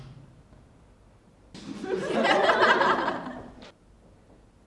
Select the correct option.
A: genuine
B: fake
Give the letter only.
A